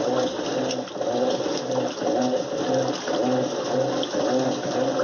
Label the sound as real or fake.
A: real